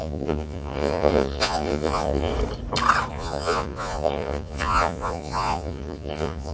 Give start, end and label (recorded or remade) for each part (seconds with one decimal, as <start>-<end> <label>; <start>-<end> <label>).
0.0-2.3 remade; 2.3-3.1 recorded; 3.1-6.5 remade